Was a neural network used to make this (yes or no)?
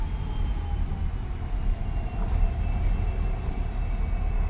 no